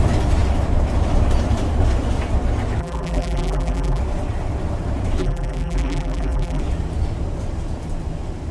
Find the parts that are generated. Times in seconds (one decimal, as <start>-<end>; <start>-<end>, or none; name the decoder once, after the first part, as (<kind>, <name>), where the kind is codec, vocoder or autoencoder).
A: 2.8-4.0 (vocoder, BigVGAN v2); 5.2-6.6